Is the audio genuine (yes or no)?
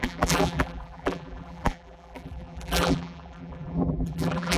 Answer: no